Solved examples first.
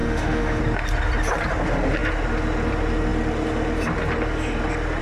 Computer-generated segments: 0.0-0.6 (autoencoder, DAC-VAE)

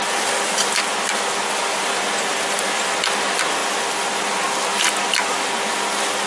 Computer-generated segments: none

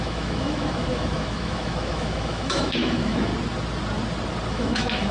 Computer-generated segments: 0.0-3.3 (autoencoder, DAC-VAE); 4.5-5.1